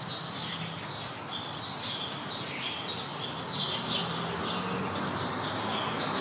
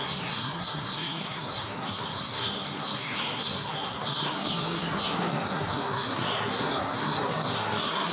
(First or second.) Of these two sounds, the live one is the first